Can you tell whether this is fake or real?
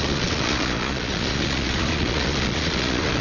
fake